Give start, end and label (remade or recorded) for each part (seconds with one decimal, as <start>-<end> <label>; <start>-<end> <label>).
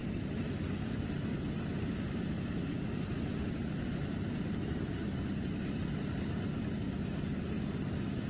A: 0.0-0.5 remade; 0.5-1.3 recorded; 1.3-6.2 remade; 6.2-8.3 recorded